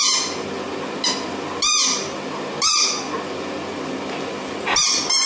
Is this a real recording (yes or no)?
yes